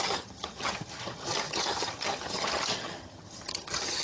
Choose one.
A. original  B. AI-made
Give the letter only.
B